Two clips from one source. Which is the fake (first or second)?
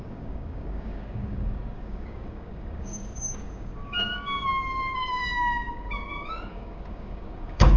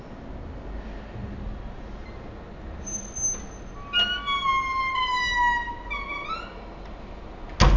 first